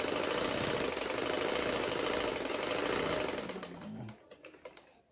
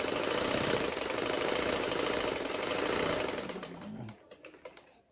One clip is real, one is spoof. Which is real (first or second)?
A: first